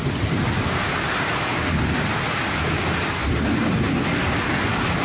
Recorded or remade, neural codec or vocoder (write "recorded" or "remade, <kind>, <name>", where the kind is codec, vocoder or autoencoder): recorded